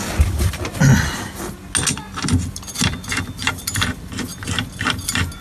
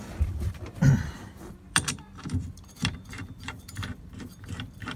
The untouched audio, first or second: first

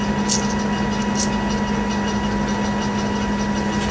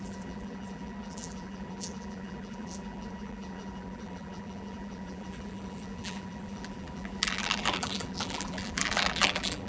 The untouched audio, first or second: first